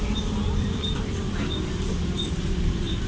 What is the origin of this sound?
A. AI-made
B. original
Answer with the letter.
A